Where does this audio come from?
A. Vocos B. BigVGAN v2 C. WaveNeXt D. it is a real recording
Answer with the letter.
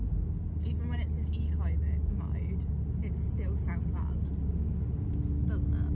D